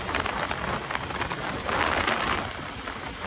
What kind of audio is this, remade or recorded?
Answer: recorded